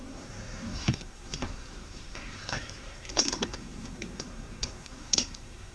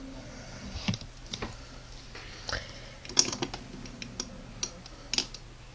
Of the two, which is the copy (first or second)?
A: first